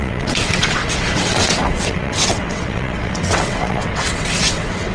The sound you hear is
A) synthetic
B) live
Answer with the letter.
A